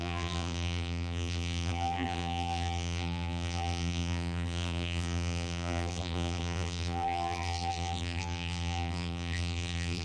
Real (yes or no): no